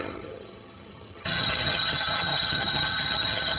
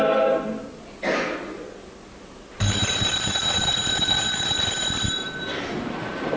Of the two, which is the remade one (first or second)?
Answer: first